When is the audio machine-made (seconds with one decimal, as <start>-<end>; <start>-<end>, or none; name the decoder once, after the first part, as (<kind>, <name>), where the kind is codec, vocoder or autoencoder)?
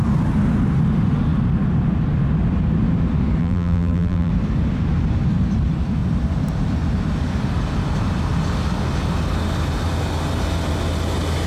3.4-4.3 (vocoder, BigVGAN v2)